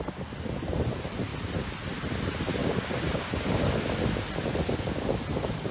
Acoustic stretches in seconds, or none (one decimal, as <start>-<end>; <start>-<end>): 0.0-2.6; 3.7-5.7